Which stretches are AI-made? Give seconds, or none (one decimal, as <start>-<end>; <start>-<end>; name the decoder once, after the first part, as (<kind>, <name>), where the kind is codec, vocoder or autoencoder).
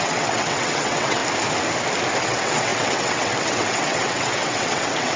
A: 0.0-1.2 (vocoder, WaveNeXt); 2.2-5.2